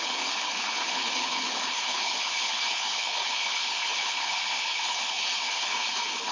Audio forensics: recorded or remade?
remade